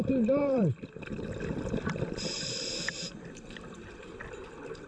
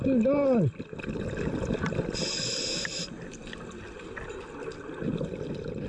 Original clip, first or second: second